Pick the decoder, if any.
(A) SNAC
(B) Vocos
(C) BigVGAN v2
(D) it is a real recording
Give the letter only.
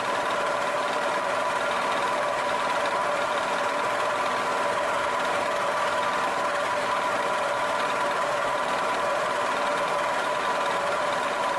C